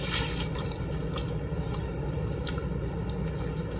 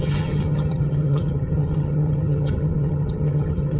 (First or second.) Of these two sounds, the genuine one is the first